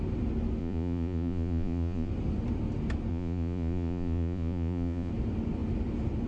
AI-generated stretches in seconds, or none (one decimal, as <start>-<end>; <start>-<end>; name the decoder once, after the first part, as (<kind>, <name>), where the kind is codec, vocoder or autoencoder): 0.6-2.1 (vocoder, Vocos); 3.1-5.1